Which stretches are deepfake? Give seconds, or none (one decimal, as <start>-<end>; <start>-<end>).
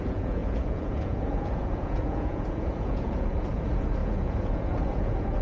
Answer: 0.0-5.4